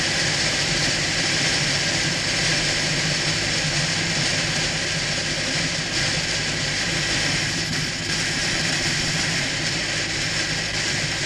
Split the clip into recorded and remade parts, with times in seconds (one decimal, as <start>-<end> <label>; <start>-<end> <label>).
0.0-8.4 recorded; 8.4-9.2 remade; 9.2-11.3 recorded